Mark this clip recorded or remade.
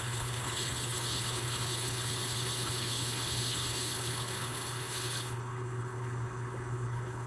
remade